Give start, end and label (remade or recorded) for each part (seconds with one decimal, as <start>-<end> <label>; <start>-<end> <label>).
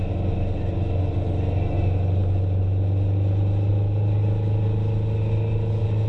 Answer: 0.0-6.1 recorded